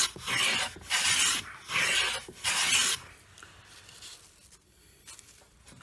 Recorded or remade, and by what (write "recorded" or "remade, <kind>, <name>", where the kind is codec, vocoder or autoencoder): recorded